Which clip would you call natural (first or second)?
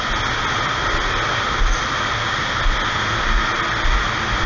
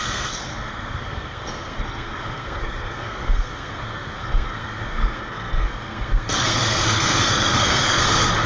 first